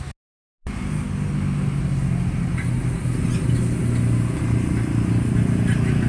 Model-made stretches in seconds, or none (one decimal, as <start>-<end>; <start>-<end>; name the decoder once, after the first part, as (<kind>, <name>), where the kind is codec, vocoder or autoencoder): none